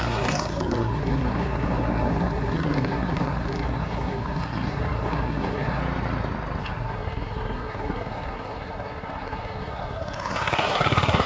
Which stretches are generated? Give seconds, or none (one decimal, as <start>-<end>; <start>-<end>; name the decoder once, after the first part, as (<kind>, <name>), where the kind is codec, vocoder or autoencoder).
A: 0.0-5.8 (codec, SNAC); 6.6-11.3

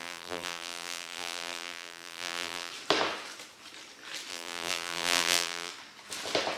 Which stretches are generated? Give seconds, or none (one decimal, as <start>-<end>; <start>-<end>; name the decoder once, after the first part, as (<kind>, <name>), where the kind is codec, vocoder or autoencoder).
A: 0.0-2.7 (vocoder, BigVGAN v2); 4.3-5.7

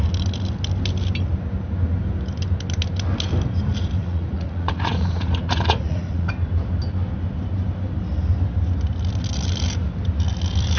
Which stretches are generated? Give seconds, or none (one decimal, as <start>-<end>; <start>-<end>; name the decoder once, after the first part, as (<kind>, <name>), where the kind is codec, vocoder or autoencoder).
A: 4.0-6.3 (vocoder, Vocos)

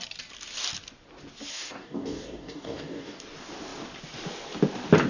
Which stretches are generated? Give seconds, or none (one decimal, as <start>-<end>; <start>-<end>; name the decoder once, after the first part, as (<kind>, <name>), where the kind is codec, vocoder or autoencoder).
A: 1.5-3.2 (codec, DAC)

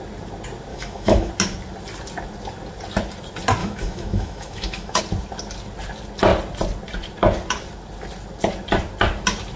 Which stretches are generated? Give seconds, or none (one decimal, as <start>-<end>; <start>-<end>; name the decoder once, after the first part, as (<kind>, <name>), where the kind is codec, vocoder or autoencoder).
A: 0.7-1.3 (autoencoder, DAC-VAE); 3.6-5.0

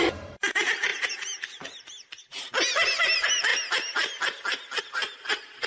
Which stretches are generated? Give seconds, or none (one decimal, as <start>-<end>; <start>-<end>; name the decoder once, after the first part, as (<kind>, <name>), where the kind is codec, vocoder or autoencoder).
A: 0.0-0.9 (vocoder, BigVGAN v2); 3.0-3.5; 4.8-5.7